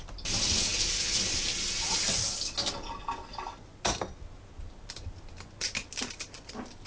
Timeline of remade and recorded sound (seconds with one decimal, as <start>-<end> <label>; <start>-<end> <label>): 0.0-6.9 recorded